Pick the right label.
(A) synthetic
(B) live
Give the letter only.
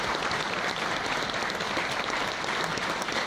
B